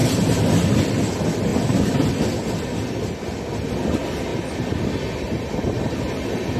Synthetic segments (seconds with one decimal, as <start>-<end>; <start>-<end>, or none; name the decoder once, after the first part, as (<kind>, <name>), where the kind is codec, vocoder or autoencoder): 0.0-0.9 (vocoder, BigVGAN v2); 1.5-2.1

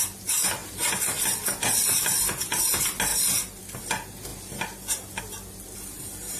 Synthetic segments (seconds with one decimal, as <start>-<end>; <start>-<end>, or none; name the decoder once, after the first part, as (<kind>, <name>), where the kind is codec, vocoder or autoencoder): 3.1-3.8 (vocoder, BigVGAN v2)

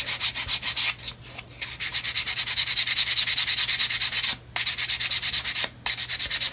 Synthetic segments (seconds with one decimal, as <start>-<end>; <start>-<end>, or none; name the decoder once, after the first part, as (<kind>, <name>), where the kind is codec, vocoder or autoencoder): none

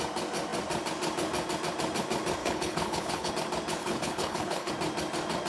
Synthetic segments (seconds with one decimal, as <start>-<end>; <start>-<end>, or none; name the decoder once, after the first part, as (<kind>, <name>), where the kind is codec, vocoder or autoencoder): 2.4-3.3 (codec, HILCodec); 3.8-4.7

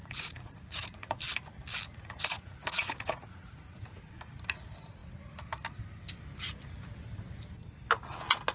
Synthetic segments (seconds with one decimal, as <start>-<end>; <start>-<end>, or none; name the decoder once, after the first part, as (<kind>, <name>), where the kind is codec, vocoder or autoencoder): 0.0-1.2 (vocoder, Vocos); 1.9-4.2

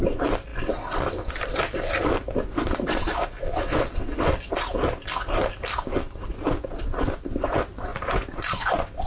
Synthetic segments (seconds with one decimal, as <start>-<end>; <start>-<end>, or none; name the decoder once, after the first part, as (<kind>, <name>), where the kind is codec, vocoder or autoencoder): 7.9-9.1 (vocoder, BigVGAN v2)

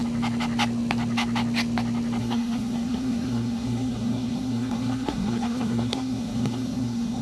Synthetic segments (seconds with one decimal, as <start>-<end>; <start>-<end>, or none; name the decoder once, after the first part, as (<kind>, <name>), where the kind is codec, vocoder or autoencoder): 2.2-7.2 (codec, SNAC)